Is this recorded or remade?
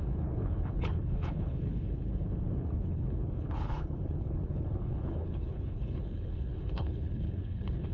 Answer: remade